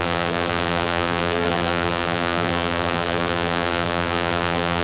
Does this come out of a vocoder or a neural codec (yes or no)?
yes